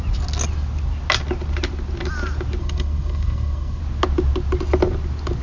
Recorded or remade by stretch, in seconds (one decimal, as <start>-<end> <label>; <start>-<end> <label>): 0.0-2.6 recorded; 2.6-3.8 remade; 3.8-5.4 recorded